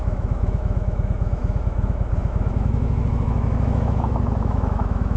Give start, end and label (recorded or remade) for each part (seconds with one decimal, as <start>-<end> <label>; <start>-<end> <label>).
0.0-5.2 remade